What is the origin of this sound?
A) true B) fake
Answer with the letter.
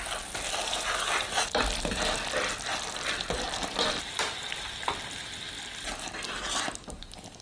A